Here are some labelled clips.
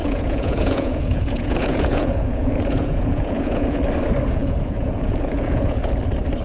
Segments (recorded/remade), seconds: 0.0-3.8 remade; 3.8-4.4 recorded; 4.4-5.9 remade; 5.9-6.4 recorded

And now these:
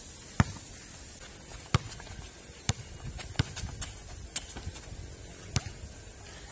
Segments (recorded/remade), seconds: 0.0-6.5 recorded